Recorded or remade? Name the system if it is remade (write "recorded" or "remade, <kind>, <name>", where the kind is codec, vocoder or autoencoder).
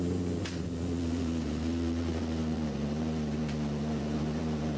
remade, vocoder, Vocos